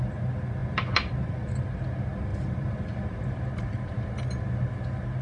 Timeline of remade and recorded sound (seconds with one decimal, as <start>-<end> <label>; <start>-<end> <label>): 0.0-2.3 recorded; 2.3-4.1 remade; 4.1-5.2 recorded